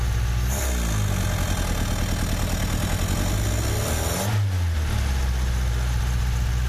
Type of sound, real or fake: real